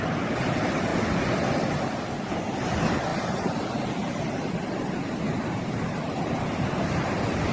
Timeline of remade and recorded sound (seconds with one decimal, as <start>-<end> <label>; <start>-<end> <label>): 0.0-7.5 recorded

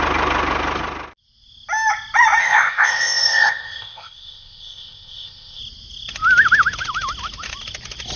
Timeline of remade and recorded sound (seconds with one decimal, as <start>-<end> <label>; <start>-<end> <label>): 0.0-2.4 recorded; 2.4-5.6 remade; 5.6-8.2 recorded

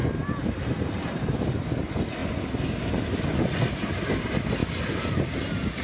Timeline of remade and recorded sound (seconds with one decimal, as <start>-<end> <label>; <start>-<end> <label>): 0.0-5.8 recorded

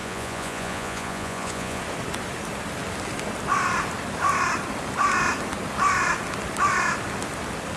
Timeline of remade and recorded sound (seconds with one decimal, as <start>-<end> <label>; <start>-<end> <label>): 0.0-1.8 remade; 1.8-7.8 recorded

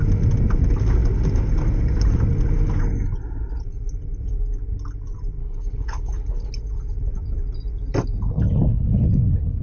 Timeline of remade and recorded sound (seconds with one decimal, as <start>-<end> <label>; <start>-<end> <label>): 0.0-5.4 recorded; 5.4-6.5 remade; 6.5-8.7 recorded; 8.7-9.6 remade